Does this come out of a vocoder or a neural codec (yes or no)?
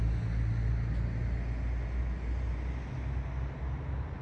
no